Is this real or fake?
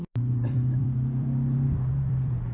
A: fake